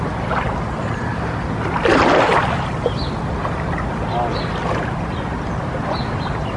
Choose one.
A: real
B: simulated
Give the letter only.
A